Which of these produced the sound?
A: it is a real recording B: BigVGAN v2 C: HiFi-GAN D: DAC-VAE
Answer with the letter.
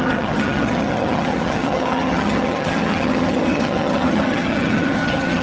C